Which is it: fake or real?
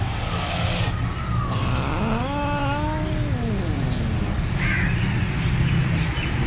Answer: real